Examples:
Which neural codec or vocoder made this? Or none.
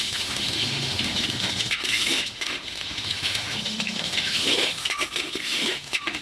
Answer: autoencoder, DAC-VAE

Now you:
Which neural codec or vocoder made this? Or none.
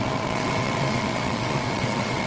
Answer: vocoder, WaveNeXt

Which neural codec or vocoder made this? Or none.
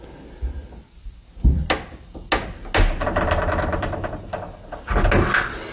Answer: none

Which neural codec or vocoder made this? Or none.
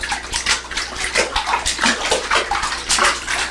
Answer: none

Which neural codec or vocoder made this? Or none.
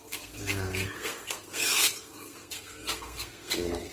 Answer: codec, SNAC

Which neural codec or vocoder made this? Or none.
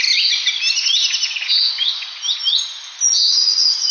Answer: none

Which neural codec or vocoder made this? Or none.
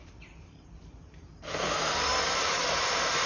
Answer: vocoder, BigVGAN v2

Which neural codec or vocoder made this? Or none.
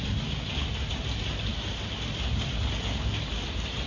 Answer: none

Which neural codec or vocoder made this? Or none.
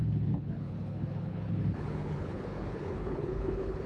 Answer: codec, HILCodec